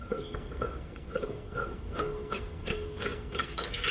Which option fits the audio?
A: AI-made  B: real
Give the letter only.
A